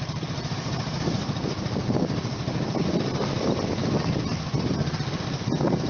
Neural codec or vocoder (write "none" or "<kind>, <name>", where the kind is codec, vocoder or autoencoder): none